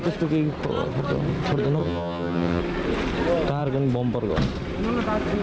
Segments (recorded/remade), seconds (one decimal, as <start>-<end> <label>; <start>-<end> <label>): 0.0-1.8 recorded; 1.8-2.6 remade; 2.6-5.4 recorded